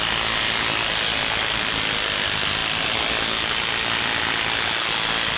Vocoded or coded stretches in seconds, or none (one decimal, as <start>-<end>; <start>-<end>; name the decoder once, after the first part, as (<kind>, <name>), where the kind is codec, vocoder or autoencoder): none